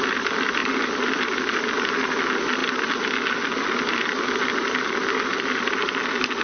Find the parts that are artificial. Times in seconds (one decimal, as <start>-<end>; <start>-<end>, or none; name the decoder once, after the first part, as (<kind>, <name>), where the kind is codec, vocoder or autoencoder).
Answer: none